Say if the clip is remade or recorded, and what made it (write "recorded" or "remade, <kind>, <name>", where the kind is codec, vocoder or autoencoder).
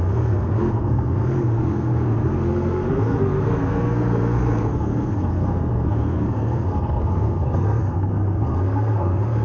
remade, codec, SNAC